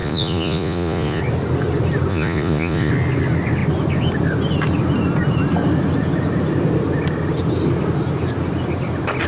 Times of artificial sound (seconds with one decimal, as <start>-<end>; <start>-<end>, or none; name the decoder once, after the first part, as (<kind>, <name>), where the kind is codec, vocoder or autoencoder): 0.0-1.2 (vocoder, Vocos); 2.1-2.9